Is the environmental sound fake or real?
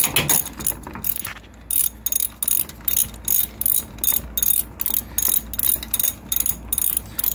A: real